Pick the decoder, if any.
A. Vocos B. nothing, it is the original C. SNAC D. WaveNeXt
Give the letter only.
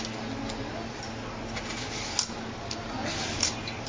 B